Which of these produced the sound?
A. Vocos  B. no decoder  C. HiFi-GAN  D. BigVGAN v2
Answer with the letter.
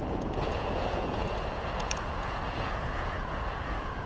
A